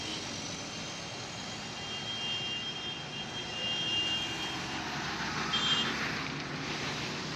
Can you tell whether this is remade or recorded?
recorded